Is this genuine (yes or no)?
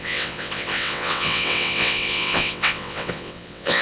no